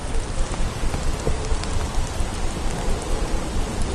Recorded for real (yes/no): yes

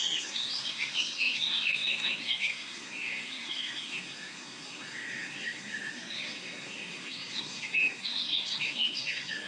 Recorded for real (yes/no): no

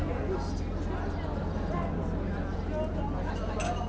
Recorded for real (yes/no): yes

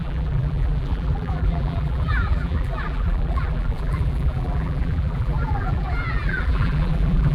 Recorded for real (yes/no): no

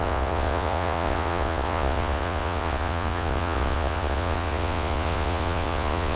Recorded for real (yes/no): no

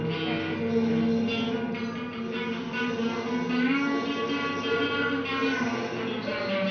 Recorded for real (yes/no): yes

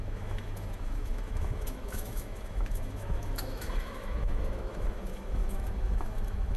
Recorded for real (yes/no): no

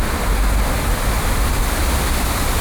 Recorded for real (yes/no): yes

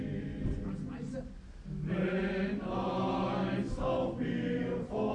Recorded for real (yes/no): yes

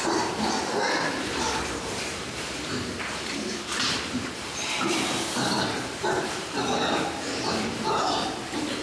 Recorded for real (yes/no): no